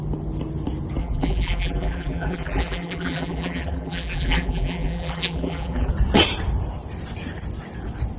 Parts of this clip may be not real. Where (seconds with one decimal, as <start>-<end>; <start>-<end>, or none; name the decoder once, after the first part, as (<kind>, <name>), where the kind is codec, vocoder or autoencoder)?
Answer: 1.0-5.9 (vocoder, BigVGAN v2)